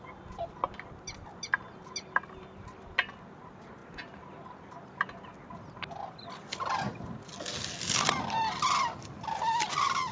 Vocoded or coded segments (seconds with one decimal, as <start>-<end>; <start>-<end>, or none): none

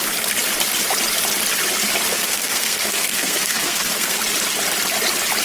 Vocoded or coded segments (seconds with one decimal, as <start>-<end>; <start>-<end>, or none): 2.1-4.2

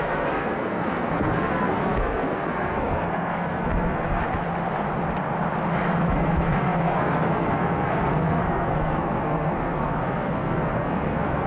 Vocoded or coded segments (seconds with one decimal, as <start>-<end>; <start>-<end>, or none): 0.0-4.2; 6.0-11.5

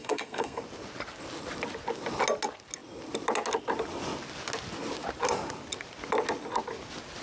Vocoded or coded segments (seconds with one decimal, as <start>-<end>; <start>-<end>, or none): 0.0-0.6

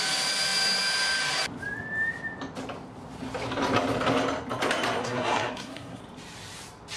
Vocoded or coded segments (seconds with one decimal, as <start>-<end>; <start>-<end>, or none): 5.0-6.0

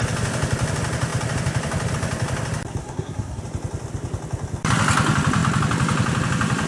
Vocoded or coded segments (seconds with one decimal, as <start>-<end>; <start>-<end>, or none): 2.8-3.4

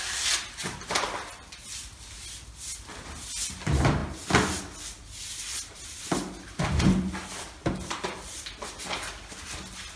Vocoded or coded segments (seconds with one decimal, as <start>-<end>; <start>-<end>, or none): none